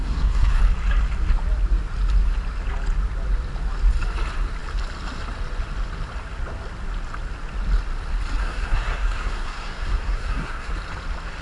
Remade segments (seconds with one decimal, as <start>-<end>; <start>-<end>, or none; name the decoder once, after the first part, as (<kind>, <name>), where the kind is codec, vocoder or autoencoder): 0.0-0.6 (codec, SNAC); 8.4-10.7